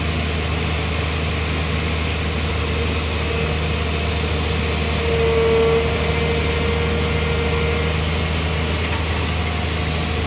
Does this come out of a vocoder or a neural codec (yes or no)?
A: no